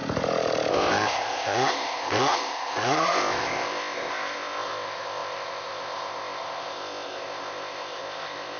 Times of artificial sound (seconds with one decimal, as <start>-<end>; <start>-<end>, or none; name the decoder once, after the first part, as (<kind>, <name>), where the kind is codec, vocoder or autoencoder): 0.7-8.6 (codec, ZipCodec)